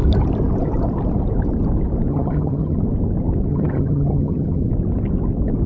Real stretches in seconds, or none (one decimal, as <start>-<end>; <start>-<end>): 0.0-2.1; 2.8-3.5; 4.7-5.7